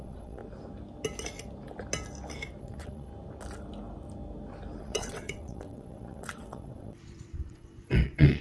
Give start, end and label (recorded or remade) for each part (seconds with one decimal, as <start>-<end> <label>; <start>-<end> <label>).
0.0-0.4 remade; 0.4-2.6 recorded; 2.6-3.1 remade; 3.1-4.8 recorded; 4.8-8.4 remade